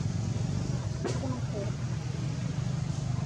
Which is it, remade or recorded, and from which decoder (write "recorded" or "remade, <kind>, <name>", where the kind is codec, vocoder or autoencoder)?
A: recorded